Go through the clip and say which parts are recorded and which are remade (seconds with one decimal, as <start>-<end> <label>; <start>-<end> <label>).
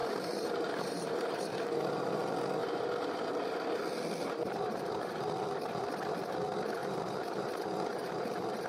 0.0-1.9 remade; 1.9-2.6 recorded; 2.6-3.8 remade; 3.8-4.2 recorded; 4.2-5.1 remade; 5.1-6.8 recorded; 6.8-8.7 remade